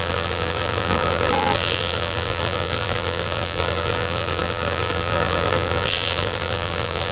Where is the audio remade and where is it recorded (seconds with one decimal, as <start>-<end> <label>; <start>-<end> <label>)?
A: 0.0-7.1 remade